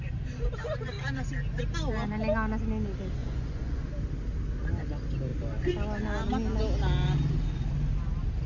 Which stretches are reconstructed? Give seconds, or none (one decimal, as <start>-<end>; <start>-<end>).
3.2-3.9